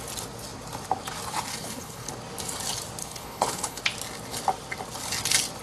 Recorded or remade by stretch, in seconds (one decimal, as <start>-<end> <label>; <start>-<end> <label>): 0.0-1.5 recorded; 1.5-2.1 remade; 2.1-3.0 recorded; 3.0-3.8 remade; 3.8-5.6 recorded